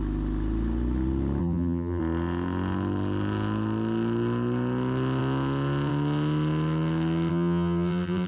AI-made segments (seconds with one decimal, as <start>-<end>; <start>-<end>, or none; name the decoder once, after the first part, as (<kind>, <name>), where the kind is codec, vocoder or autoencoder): 1.4-2.0 (vocoder, BigVGAN v2); 7.3-8.3